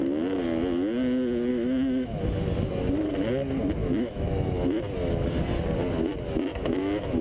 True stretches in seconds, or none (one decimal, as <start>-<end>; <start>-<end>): 0.0-1.5; 2.2-3.8; 4.8-6.5